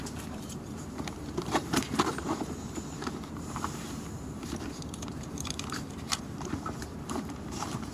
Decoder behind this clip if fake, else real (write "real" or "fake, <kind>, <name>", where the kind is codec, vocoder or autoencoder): fake, vocoder, BigVGAN v2